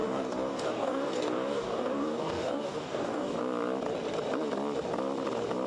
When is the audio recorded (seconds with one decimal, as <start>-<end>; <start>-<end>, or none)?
3.4-5.7